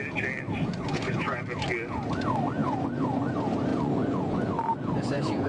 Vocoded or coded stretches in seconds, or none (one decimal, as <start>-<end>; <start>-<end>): 0.9-1.4; 2.6-3.3; 3.7-5.5